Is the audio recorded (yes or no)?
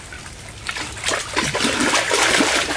yes